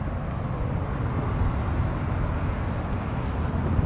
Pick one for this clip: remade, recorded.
recorded